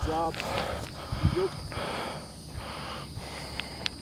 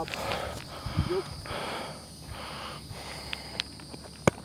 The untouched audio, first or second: second